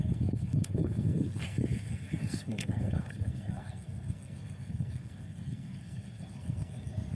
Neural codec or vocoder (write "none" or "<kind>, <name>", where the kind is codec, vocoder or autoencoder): codec, SNAC